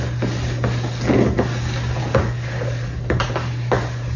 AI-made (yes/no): no